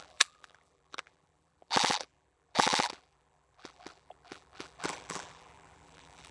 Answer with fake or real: fake